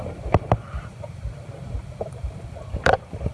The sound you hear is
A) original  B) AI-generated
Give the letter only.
B